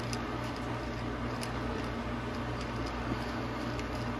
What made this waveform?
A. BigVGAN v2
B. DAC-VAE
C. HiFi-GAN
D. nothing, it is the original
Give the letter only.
D